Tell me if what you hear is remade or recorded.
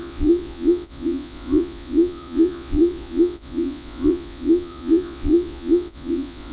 remade